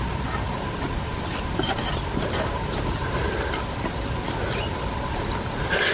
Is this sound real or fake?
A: real